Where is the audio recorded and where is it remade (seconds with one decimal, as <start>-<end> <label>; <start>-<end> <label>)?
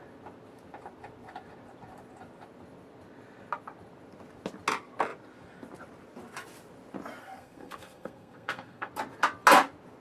0.0-7.2 recorded; 7.2-8.9 remade; 8.9-10.0 recorded